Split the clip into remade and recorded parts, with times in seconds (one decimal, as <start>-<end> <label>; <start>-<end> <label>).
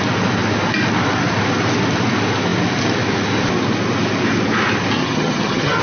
0.0-5.0 recorded; 5.0-5.8 remade